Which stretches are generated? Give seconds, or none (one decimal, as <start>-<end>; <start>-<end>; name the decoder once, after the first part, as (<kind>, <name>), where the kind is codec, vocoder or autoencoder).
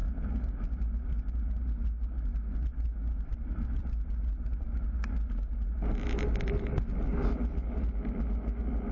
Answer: 3.3-4.1 (vocoder, BigVGAN v2)